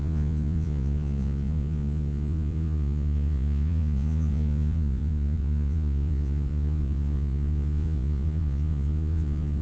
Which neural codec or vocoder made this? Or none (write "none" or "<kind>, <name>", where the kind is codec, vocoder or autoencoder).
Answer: vocoder, Vocos